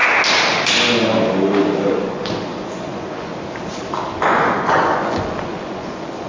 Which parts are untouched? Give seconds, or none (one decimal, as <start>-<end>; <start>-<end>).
0.0-1.9; 3.3-4.1